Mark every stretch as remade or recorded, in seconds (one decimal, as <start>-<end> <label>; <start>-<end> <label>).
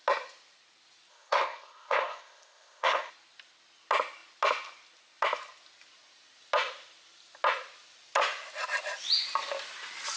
0.0-1.1 recorded; 1.1-3.1 remade; 3.1-10.2 recorded